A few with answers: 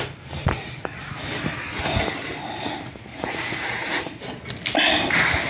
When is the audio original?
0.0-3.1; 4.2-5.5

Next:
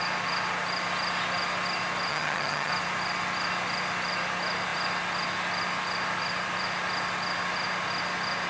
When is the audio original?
0.0-2.1; 2.7-8.5

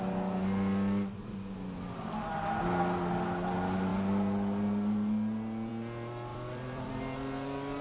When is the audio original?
0.0-6.3; 6.9-7.8

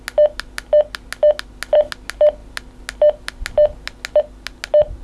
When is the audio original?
0.0-5.0

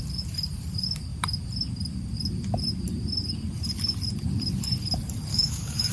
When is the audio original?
0.0-5.3

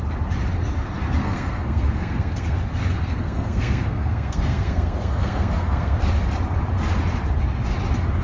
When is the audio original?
0.0-1.2; 2.6-3.0; 6.0-8.2